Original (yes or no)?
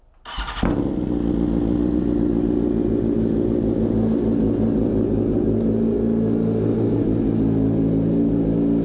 yes